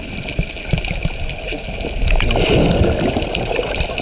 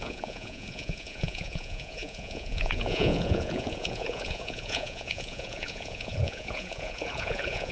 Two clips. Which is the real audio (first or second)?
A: first